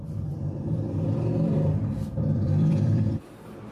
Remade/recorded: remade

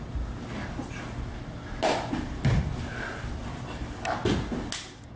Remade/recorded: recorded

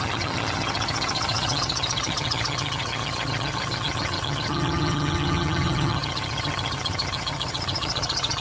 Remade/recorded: remade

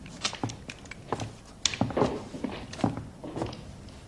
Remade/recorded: recorded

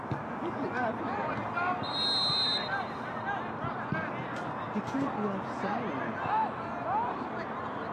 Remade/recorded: recorded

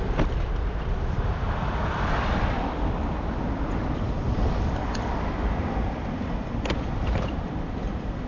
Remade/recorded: remade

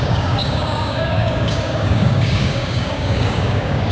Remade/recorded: remade